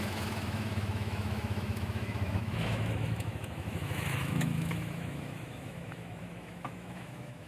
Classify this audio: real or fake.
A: fake